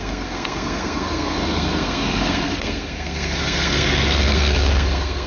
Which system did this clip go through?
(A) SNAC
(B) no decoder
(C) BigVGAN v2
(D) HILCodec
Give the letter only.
A